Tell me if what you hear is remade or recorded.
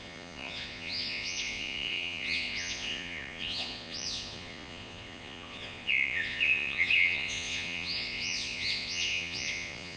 remade